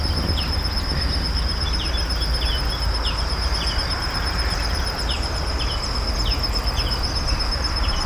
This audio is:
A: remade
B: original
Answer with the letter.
B